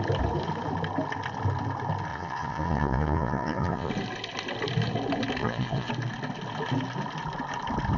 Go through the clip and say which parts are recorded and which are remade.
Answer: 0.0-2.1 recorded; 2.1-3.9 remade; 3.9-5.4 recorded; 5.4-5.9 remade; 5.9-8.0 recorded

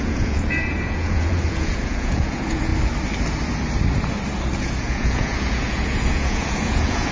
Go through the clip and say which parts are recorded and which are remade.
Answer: 0.0-2.7 remade; 2.7-4.6 recorded; 4.6-7.1 remade

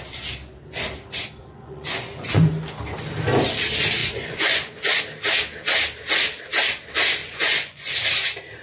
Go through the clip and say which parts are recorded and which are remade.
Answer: 0.0-1.4 recorded; 1.4-2.5 remade; 2.5-4.0 recorded; 4.0-5.0 remade; 5.0-7.2 recorded; 7.2-7.9 remade; 7.9-8.6 recorded

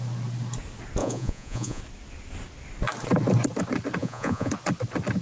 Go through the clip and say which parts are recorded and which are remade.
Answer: 0.0-1.0 recorded; 1.0-1.8 remade; 1.8-4.0 recorded; 4.0-4.5 remade; 4.5-5.2 recorded

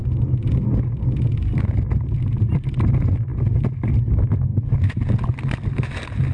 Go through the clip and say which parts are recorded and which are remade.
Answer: 0.0-6.3 recorded

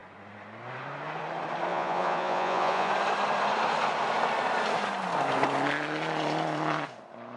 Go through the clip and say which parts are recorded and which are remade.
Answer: 0.0-1.7 recorded; 1.7-2.9 remade; 2.9-7.4 recorded

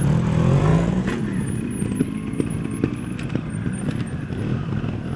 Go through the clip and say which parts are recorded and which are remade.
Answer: 0.0-0.7 recorded; 0.7-1.2 remade; 1.2-5.2 recorded

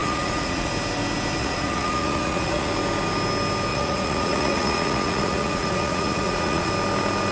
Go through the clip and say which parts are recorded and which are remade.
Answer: 0.0-0.7 remade; 0.7-1.4 recorded; 1.4-2.7 remade; 2.7-3.7 recorded; 3.7-6.7 remade; 6.7-7.3 recorded